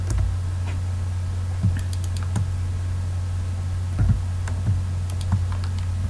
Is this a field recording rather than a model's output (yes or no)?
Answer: yes